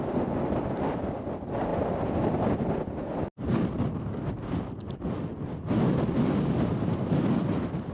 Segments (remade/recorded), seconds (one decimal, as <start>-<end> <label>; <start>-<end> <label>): 0.0-7.9 recorded